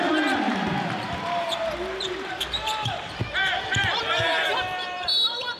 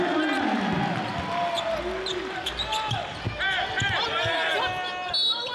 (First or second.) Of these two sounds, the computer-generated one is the first